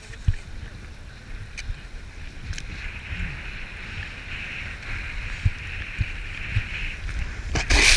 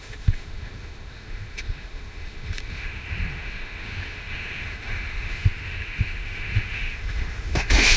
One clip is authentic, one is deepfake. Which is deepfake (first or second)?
second